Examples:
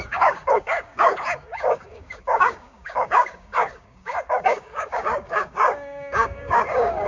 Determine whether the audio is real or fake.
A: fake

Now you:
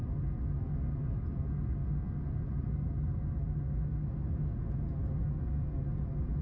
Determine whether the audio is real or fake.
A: real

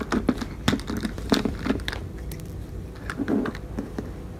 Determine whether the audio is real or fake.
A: real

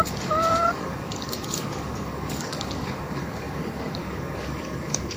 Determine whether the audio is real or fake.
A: fake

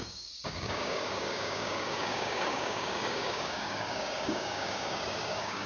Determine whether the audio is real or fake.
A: fake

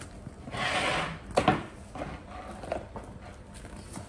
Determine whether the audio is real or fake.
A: real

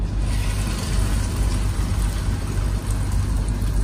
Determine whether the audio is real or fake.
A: real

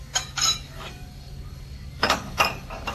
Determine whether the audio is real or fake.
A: fake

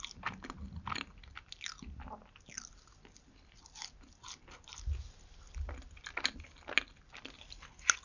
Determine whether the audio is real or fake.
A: real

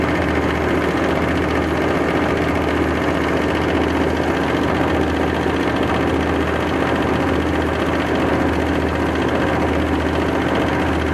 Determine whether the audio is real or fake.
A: real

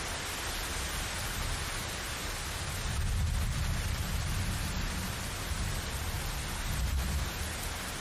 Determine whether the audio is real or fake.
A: real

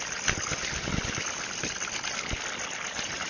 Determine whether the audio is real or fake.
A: real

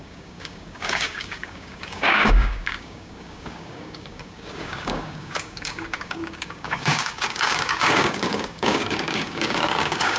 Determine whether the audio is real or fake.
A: fake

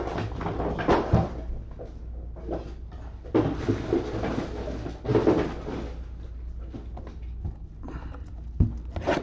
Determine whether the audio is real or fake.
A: real